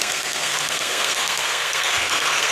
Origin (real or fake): fake